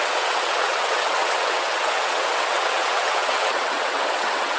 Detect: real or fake fake